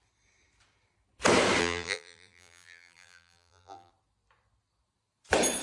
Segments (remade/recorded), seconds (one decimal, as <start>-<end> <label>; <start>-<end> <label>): 0.0-1.6 recorded; 1.6-3.9 remade; 3.9-5.6 recorded